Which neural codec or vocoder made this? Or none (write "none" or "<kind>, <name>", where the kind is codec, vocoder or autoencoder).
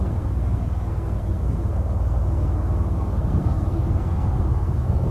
codec, SNAC